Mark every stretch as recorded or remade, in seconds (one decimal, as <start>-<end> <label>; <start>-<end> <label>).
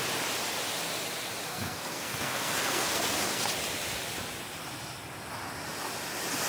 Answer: 0.0-1.5 recorded; 1.5-3.5 remade; 3.5-6.5 recorded